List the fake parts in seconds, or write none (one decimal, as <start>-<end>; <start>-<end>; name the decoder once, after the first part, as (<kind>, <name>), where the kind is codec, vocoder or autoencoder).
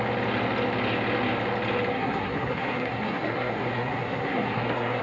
1.9-5.0 (codec, SNAC)